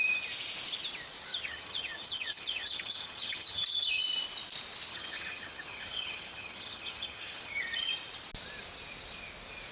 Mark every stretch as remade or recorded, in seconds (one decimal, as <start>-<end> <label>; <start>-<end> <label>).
0.0-1.3 recorded; 1.3-4.0 remade; 4.0-4.9 recorded; 4.9-7.9 remade; 7.9-9.7 recorded